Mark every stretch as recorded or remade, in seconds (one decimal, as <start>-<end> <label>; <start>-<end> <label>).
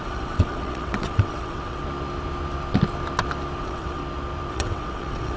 0.0-1.8 remade; 1.8-3.6 recorded; 3.6-4.0 remade; 4.0-4.5 recorded; 4.5-5.4 remade